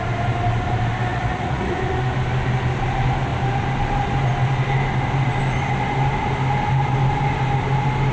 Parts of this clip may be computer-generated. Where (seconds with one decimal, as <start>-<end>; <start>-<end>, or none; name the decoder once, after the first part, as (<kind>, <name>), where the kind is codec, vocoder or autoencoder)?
1.1-1.8 (vocoder, Vocos)